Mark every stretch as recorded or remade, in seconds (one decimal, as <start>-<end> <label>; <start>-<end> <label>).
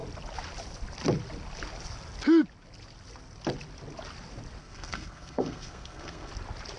0.0-4.6 recorded; 4.6-6.3 remade; 6.3-6.8 recorded